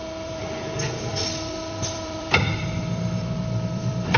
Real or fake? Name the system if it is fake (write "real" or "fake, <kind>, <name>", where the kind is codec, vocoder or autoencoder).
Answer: fake, vocoder, BigVGAN v2